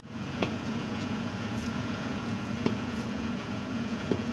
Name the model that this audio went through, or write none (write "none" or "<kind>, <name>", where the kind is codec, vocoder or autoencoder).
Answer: vocoder, Vocos